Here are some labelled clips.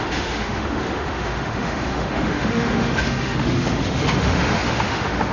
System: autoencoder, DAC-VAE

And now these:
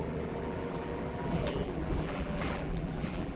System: vocoder, BigVGAN v2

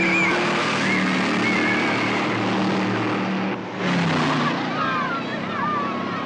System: none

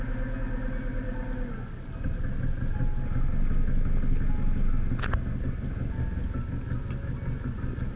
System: none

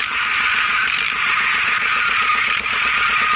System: vocoder, BigVGAN v2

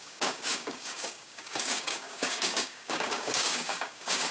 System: codec, DAC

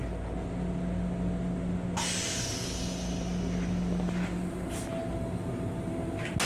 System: none